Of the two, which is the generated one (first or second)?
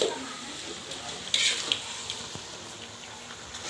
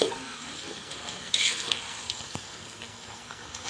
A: second